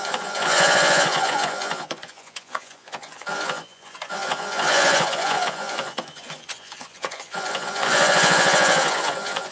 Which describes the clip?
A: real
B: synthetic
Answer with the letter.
B